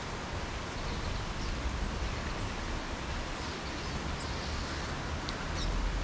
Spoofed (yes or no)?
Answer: no